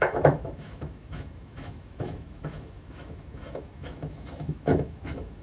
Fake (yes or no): yes